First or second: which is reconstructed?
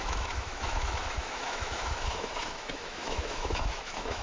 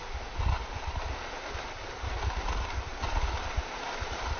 first